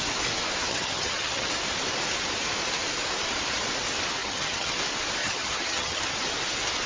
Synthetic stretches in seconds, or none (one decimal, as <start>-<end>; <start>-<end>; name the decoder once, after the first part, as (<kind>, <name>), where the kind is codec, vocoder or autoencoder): 0.7-1.5 (vocoder, HiFi-GAN); 4.2-4.7; 5.2-6.0